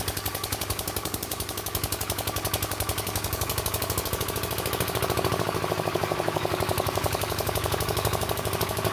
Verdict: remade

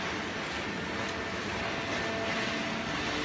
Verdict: recorded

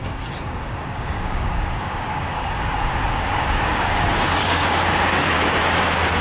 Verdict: remade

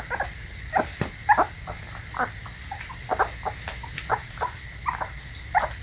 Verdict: recorded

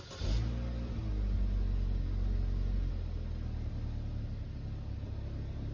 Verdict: recorded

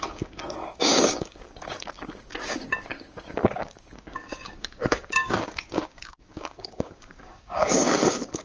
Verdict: remade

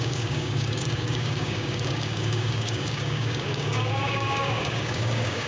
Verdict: remade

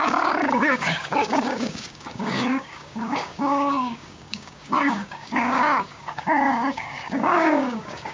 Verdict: remade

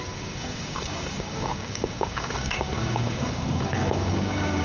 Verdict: remade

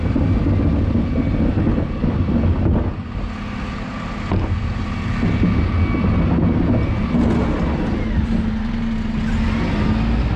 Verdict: recorded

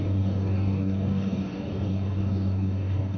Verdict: remade